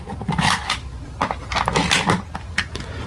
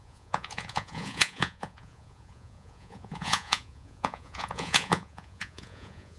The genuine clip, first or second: first